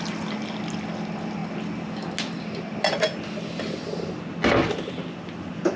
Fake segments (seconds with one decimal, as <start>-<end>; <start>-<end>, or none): none